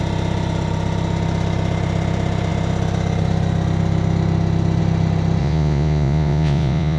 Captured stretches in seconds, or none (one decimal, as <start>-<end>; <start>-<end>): 0.0-5.4

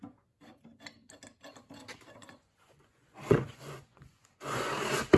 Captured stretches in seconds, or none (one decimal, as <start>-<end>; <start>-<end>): 0.0-2.2; 4.7-5.2